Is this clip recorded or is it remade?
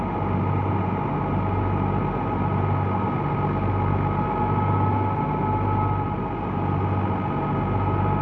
recorded